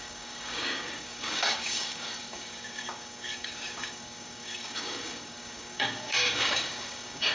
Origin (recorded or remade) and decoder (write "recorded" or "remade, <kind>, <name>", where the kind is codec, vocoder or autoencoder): remade, codec, DAC